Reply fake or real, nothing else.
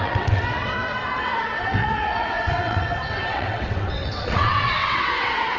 fake